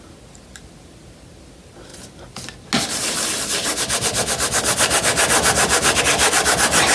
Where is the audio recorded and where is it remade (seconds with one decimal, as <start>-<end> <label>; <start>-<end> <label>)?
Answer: 0.0-6.9 recorded